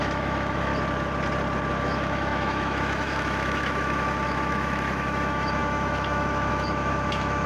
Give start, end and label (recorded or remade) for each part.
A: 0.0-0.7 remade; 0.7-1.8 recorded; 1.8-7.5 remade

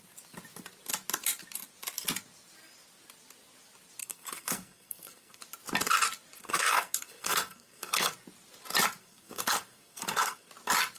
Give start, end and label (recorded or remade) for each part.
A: 0.0-4.0 recorded; 4.0-5.4 remade; 5.4-6.4 recorded; 6.4-8.1 remade; 8.1-9.0 recorded; 9.0-10.5 remade; 10.5-11.0 recorded

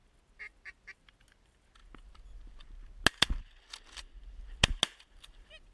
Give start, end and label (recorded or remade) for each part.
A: 0.0-5.7 recorded

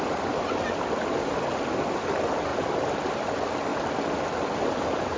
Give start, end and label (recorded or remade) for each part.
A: 0.0-5.2 recorded

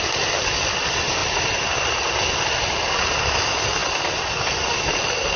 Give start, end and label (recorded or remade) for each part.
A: 0.0-5.4 recorded

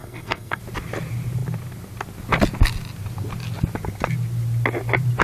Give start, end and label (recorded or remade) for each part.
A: 0.0-0.6 remade; 0.6-5.2 recorded